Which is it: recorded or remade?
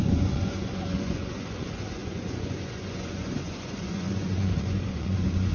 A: remade